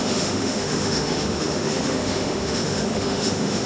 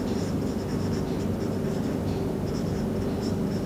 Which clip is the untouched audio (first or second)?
second